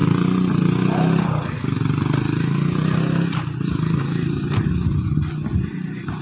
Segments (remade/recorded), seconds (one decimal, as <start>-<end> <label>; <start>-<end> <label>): 0.0-6.2 recorded